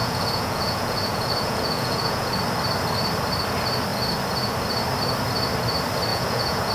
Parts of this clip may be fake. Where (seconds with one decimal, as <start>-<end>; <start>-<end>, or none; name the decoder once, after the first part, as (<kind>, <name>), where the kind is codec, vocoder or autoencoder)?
0.0-2.4 (vocoder, Vocos); 6.1-6.7